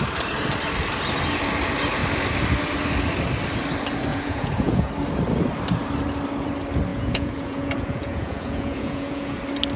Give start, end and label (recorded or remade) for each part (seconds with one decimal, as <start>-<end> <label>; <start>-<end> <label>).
0.0-4.1 recorded; 4.1-4.9 remade; 4.9-6.9 recorded; 6.9-9.4 remade; 9.4-9.8 recorded